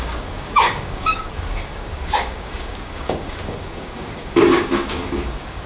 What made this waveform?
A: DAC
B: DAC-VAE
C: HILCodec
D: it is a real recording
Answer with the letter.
A